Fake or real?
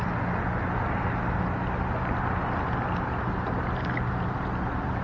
real